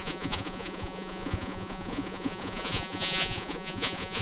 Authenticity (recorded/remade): remade